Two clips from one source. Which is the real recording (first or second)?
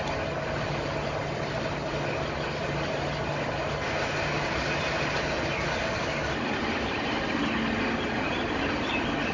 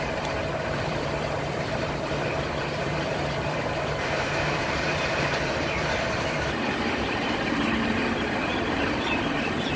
first